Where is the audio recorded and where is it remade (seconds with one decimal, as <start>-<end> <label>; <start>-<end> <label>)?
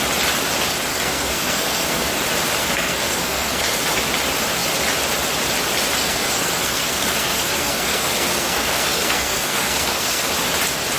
0.0-0.9 recorded; 0.9-2.1 remade; 2.1-2.6 recorded; 2.6-4.0 remade; 4.0-6.0 recorded; 6.0-10.3 remade; 10.3-11.0 recorded